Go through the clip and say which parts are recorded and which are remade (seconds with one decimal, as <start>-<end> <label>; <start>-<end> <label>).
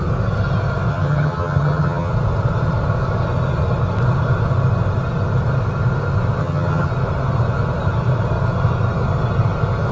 0.0-0.9 recorded; 0.9-2.1 remade; 2.1-6.4 recorded; 6.4-6.9 remade; 6.9-9.9 recorded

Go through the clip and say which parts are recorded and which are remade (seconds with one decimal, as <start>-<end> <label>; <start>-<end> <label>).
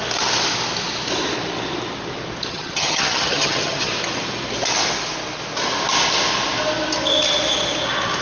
0.0-2.5 recorded; 2.5-3.9 remade; 3.9-8.2 recorded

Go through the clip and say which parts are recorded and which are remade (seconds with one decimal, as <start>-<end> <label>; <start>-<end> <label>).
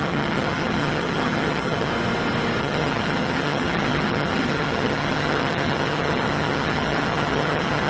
0.0-1.9 remade; 1.9-2.6 recorded; 2.6-7.9 remade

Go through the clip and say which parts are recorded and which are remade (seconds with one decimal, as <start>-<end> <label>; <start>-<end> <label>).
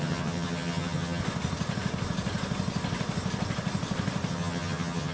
0.0-1.2 remade; 1.2-4.3 recorded; 4.3-5.1 remade